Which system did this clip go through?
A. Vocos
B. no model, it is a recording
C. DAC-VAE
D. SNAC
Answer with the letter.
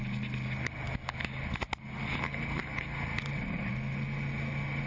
B